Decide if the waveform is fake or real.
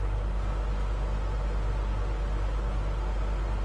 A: real